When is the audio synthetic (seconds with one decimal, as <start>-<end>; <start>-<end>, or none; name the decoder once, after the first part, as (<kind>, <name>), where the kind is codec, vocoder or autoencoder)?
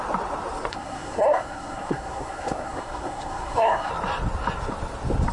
0.7-3.9 (codec, SNAC)